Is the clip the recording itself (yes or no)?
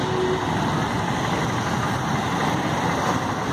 yes